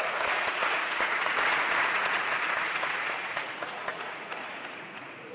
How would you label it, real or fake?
fake